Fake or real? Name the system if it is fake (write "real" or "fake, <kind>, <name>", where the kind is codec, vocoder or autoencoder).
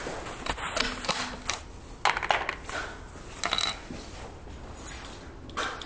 real